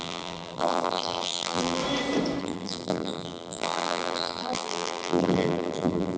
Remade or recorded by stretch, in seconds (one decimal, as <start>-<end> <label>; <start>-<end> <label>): 0.0-1.8 remade; 1.8-2.4 recorded; 2.4-6.2 remade